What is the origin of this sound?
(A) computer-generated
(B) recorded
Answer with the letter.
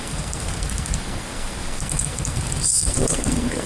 A